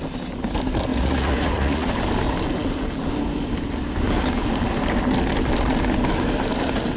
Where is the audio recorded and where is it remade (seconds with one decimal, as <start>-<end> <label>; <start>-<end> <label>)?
0.0-0.9 recorded; 0.9-1.9 remade; 1.9-7.0 recorded